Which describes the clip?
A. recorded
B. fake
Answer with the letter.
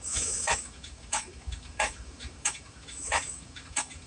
B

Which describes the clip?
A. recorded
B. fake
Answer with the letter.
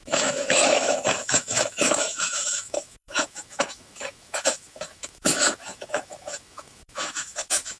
B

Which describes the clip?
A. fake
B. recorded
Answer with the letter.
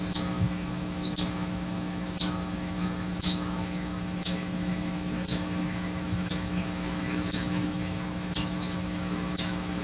A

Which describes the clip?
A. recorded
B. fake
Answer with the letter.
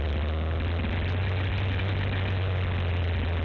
A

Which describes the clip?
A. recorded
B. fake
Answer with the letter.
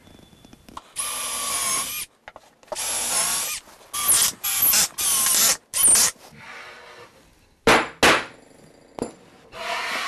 A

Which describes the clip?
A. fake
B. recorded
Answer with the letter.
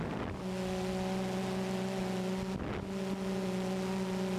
B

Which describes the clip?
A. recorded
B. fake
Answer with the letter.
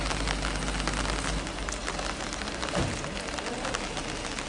A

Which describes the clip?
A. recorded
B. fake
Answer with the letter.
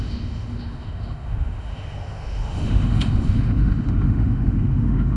B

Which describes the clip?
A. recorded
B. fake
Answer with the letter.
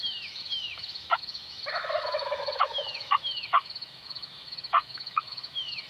B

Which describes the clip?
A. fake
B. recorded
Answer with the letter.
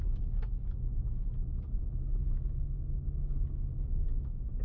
A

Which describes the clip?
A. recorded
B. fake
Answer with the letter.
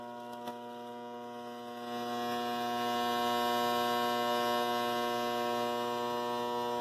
A